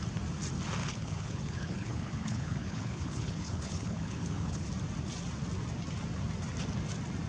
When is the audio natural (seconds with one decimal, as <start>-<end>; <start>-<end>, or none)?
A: 0.0-0.8; 4.7-7.3